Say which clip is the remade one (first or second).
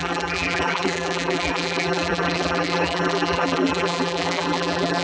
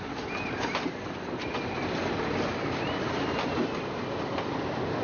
first